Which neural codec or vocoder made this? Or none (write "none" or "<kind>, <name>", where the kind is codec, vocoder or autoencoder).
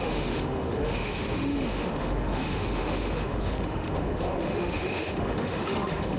autoencoder, DAC-VAE